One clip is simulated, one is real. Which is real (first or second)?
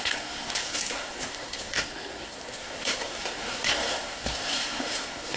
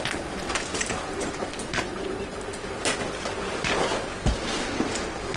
second